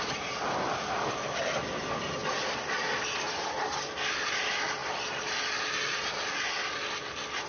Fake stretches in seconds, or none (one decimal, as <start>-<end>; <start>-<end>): none